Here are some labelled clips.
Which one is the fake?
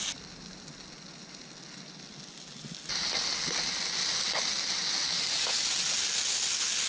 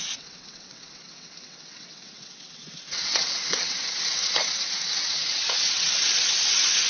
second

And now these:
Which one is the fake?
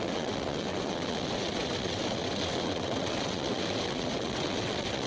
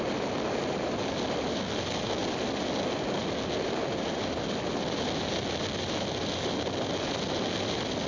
first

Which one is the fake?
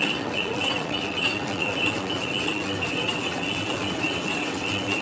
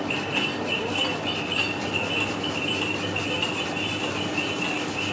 first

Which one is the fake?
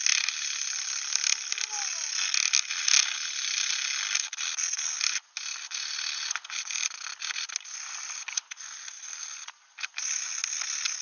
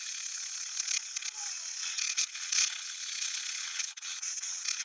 second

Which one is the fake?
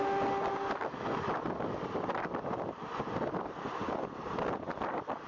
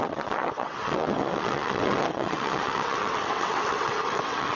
second